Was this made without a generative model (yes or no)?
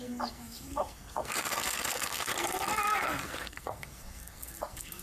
no